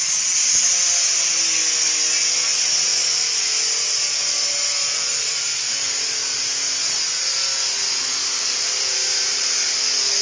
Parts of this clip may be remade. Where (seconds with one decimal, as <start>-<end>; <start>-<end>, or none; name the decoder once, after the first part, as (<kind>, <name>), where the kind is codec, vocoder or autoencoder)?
8.2-9.6 (vocoder, BigVGAN v2)

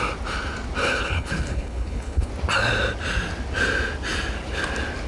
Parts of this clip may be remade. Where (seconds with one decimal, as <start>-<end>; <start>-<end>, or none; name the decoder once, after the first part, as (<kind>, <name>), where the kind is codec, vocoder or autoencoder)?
0.8-2.3 (codec, HILCodec)

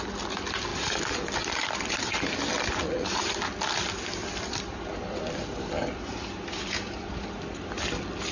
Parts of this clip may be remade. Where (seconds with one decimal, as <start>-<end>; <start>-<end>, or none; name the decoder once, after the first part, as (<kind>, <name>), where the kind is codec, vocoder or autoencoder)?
0.7-3.3 (vocoder, BigVGAN v2); 4.2-5.7

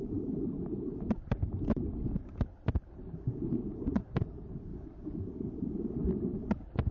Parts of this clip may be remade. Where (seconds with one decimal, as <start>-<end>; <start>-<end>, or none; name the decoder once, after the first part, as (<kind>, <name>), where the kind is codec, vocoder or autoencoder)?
3.6-4.2 (vocoder, Vocos); 4.7-5.2

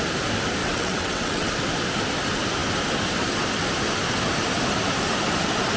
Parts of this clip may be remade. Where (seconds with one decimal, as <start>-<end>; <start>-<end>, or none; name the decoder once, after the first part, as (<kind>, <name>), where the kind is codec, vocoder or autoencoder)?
0.6-1.5 (vocoder, WaveNeXt)

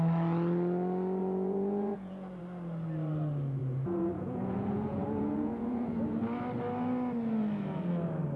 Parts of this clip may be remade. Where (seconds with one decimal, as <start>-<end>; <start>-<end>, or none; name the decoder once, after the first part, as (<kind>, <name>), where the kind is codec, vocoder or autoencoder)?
1.2-2.4 (vocoder, Vocos); 3.6-6.0

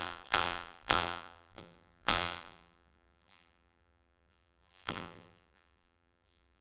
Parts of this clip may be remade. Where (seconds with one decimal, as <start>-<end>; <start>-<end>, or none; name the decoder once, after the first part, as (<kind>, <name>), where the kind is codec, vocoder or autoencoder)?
0.0-6.6 (vocoder, BigVGAN v2)

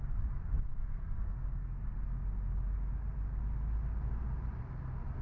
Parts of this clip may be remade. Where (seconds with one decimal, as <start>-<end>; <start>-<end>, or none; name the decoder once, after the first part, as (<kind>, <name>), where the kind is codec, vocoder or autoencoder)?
0.7-1.8 (codec, SNAC)